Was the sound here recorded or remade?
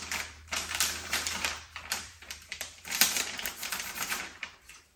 remade